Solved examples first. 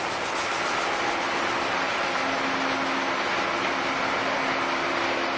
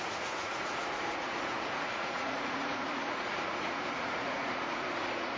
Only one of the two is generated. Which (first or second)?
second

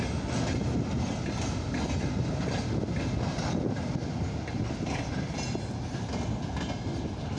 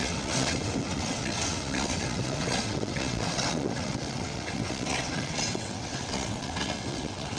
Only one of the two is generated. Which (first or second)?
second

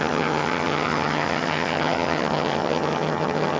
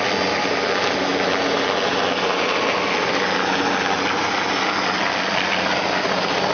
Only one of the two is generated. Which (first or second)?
first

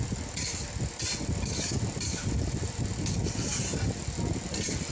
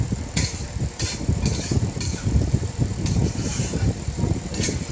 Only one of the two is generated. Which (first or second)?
second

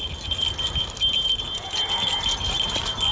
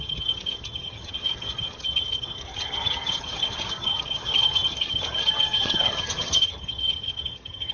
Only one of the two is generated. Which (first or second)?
second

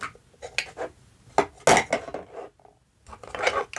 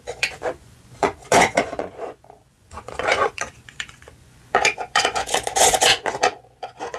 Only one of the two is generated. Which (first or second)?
second